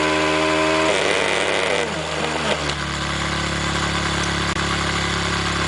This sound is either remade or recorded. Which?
recorded